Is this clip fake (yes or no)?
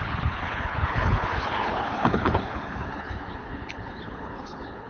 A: yes